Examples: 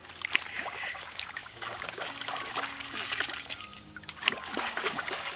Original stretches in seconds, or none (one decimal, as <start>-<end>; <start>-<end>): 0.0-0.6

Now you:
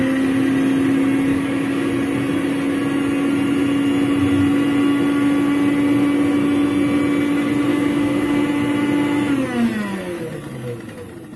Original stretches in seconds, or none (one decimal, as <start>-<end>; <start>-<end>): 0.0-1.3; 1.9-7.7; 8.4-11.4

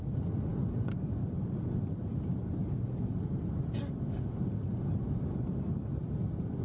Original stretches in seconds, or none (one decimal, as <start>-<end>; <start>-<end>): 0.0-6.6

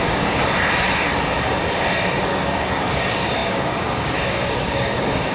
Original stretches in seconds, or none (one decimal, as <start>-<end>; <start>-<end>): 0.4-1.8

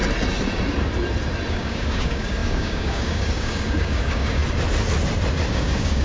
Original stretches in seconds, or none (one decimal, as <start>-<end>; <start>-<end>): 0.0-1.5; 4.4-5.5

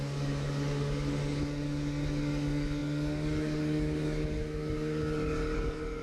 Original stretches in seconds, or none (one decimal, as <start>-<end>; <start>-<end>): none

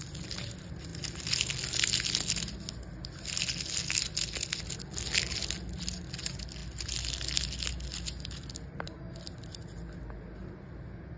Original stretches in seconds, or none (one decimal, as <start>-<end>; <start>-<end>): 0.0-11.2

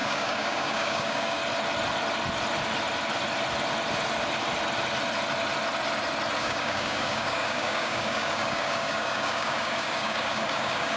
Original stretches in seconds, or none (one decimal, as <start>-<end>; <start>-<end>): 1.4-6.4